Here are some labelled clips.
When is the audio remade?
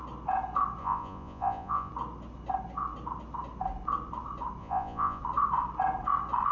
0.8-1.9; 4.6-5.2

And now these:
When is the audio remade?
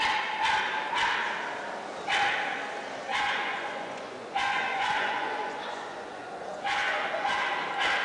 3.1-7.5